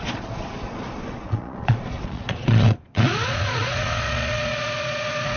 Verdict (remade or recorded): remade